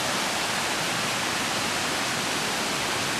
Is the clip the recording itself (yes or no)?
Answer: yes